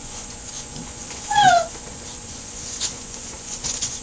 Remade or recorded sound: remade